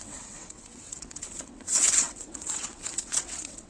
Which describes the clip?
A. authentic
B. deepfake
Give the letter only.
B